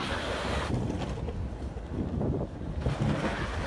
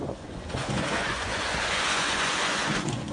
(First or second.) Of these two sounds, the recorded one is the first